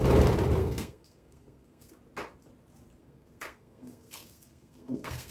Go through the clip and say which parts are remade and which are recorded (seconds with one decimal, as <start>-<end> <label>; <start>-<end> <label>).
0.0-0.6 recorded; 0.6-2.0 remade; 2.0-3.0 recorded; 3.0-5.3 remade